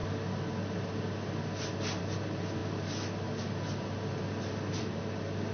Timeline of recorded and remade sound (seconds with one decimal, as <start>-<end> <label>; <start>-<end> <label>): 0.0-5.5 recorded